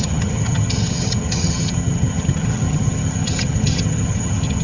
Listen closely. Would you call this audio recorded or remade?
remade